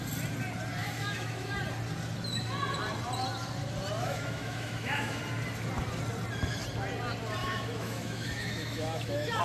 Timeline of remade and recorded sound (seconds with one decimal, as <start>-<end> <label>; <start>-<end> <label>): 0.0-0.8 recorded; 0.8-1.6 remade; 1.6-4.0 recorded; 4.0-5.2 remade; 5.2-7.4 recorded; 7.4-9.4 remade